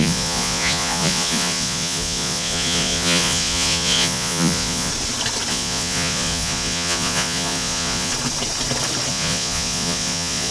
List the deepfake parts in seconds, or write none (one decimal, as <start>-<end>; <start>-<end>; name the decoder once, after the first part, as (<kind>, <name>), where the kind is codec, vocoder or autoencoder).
0.0-4.9 (vocoder, Vocos); 5.5-8.1; 9.1-10.5